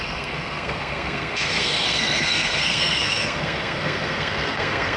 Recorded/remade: remade